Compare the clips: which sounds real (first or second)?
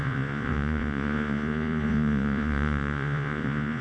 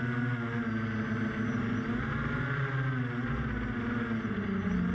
second